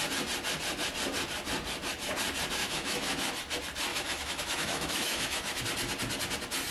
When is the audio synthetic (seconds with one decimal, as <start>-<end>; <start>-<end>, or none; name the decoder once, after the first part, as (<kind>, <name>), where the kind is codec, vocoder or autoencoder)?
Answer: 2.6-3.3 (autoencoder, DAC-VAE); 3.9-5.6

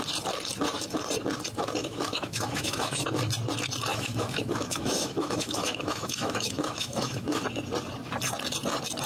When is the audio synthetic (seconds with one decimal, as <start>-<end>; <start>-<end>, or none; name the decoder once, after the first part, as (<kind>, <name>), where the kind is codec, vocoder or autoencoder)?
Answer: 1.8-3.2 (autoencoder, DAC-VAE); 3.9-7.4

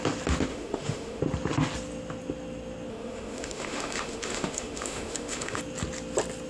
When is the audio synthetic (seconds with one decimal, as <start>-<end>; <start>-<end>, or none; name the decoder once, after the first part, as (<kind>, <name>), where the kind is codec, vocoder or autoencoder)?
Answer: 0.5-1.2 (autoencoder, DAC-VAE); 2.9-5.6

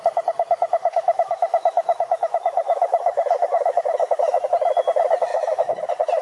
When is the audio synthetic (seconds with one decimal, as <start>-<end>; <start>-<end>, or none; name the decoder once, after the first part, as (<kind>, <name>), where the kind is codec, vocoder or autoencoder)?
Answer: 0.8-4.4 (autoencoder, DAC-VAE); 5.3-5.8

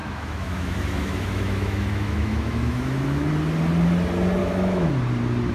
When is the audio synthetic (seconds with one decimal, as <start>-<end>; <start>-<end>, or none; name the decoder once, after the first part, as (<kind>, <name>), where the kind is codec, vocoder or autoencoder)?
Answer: 0.0-3.3 (autoencoder, DAC-VAE); 4.4-4.9

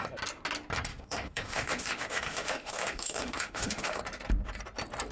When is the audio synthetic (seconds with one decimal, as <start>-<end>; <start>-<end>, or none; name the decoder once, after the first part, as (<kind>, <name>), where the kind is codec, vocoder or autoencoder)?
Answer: 0.9-4.0 (autoencoder, DAC-VAE)

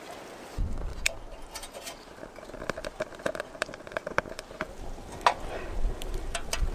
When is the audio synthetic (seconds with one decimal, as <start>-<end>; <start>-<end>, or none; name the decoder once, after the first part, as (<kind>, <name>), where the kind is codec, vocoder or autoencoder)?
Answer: none